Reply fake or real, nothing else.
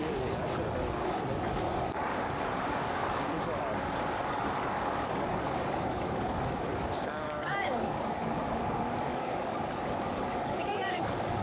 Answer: fake